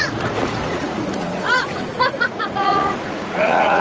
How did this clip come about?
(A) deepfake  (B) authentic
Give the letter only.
A